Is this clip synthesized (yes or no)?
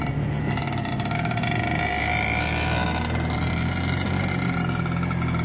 no